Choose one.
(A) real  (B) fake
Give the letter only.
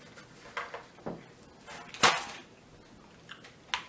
A